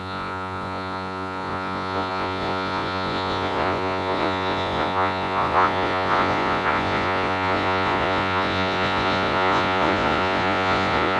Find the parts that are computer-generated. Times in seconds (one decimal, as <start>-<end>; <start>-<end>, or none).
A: 0.0-11.2